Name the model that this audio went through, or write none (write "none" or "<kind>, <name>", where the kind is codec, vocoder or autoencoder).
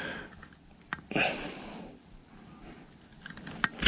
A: none